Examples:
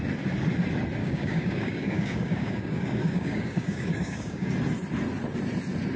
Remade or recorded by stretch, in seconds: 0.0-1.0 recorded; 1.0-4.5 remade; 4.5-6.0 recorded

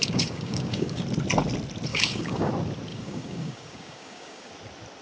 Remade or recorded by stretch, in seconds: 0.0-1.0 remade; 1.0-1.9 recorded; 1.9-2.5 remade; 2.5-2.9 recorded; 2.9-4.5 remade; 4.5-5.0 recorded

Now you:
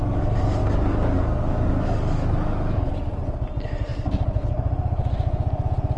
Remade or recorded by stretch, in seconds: 0.0-0.6 recorded; 0.6-3.2 remade; 3.2-6.0 recorded

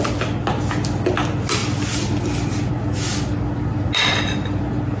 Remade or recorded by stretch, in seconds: 0.0-5.0 recorded

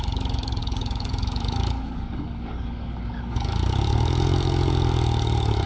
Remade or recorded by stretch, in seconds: 0.0-5.7 remade

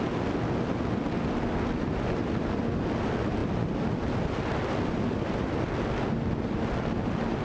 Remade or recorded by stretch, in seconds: 0.0-7.4 recorded